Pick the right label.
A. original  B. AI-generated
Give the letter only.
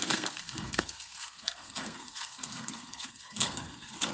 B